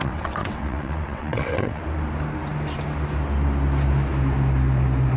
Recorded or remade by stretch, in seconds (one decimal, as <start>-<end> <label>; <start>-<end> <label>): 0.0-1.8 remade; 1.8-5.2 recorded